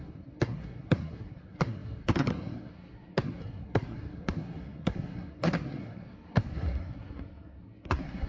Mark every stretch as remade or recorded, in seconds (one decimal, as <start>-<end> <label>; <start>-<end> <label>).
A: 0.0-8.3 remade